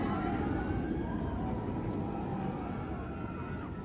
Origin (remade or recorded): recorded